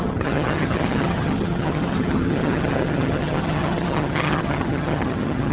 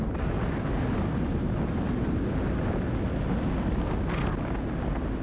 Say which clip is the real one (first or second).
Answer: second